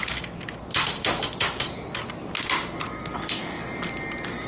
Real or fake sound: real